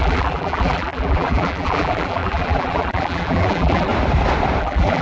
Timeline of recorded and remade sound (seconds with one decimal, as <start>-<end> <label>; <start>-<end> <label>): 0.0-3.9 remade; 3.9-4.6 recorded; 4.6-5.0 remade